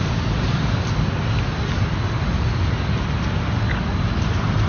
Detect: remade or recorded recorded